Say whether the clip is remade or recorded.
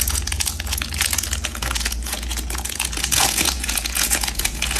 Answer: remade